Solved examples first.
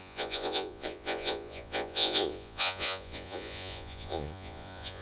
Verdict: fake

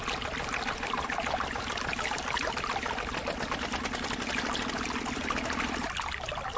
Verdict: real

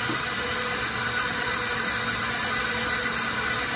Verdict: real